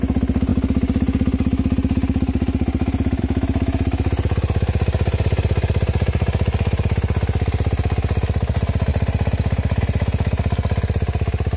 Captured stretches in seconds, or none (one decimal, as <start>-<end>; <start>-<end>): 0.0-11.6